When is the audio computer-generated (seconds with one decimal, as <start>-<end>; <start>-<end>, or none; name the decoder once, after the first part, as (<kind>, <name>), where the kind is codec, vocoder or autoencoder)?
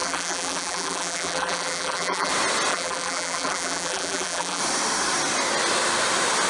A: 0.0-2.3 (vocoder, BigVGAN v2); 2.7-4.6